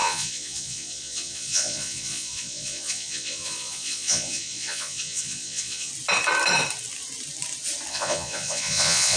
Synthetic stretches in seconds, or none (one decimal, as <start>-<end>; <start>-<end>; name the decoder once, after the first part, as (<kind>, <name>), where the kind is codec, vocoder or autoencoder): 0.0-5.9 (vocoder, Vocos); 7.9-9.2